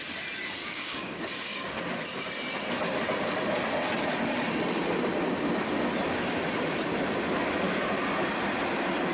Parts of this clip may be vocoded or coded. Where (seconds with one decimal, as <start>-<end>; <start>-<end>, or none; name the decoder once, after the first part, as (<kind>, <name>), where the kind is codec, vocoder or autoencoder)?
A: 0.6-1.8 (codec, DAC)

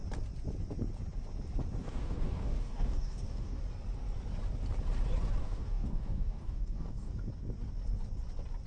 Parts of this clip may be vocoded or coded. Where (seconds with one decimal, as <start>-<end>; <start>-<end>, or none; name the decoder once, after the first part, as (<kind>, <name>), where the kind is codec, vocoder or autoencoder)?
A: 1.8-3.6 (codec, DAC); 5.4-7.1

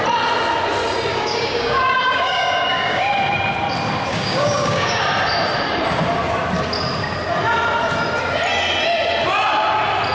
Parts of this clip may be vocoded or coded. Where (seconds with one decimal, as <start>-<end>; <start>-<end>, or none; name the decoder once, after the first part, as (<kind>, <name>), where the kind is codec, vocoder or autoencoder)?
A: 1.1-3.1 (codec, DAC); 4.1-5.0

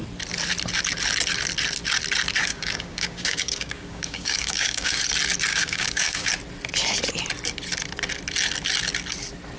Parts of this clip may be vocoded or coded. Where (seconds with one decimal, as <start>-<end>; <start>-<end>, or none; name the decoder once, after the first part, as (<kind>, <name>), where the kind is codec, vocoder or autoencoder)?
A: 2.4-5.0 (codec, DAC); 5.5-6.3

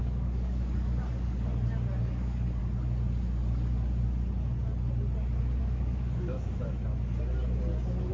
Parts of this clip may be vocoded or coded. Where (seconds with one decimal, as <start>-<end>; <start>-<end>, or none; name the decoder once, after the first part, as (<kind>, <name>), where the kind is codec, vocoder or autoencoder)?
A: 0.0-1.5 (codec, DAC); 2.0-2.6; 5.6-6.6

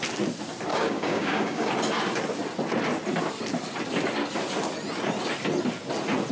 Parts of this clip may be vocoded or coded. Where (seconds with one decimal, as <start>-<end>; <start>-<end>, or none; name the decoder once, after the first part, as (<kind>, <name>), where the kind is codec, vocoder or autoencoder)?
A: 0.7-1.7 (codec, DAC)